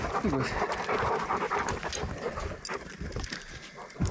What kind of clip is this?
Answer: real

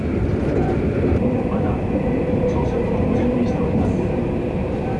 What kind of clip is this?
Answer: fake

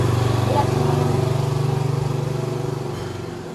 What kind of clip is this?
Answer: real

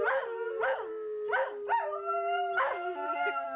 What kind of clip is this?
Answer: real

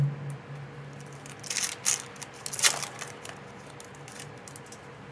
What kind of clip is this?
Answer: real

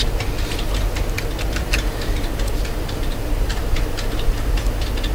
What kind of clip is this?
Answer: fake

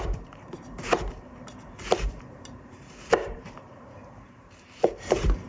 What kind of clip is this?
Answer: fake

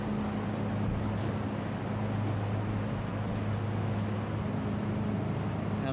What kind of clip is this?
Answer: real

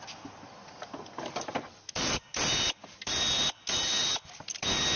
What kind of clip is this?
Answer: real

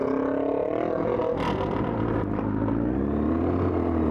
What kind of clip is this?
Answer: real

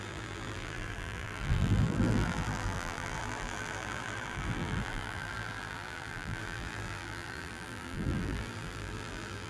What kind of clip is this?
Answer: fake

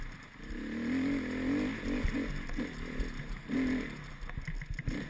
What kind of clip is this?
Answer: real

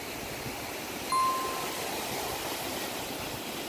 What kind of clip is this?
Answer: real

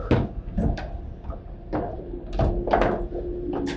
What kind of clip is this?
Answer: real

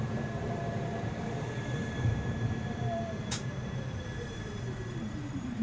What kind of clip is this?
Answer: fake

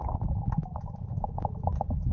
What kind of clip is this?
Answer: real